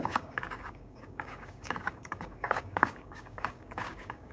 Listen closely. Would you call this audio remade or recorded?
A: remade